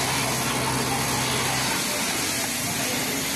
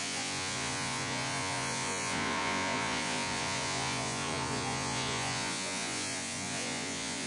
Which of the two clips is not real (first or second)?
second